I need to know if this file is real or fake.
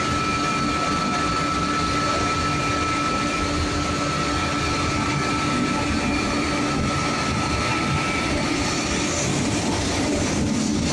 real